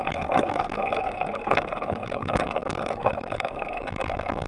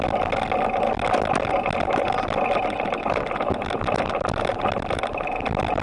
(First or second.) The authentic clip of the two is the second